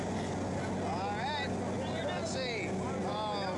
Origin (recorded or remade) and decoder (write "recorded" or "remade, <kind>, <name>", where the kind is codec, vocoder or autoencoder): recorded